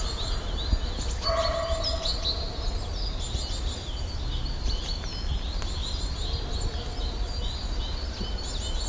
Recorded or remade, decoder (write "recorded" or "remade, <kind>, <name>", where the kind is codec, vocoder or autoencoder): recorded